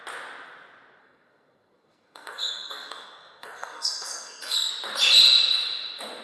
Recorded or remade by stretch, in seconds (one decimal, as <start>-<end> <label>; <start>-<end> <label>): 0.0-1.0 recorded; 1.0-4.7 remade; 4.7-6.2 recorded